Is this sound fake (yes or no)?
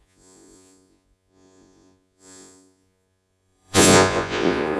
yes